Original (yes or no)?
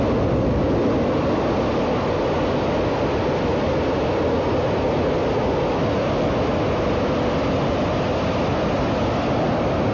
yes